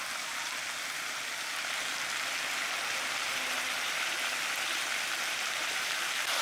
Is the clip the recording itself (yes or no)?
yes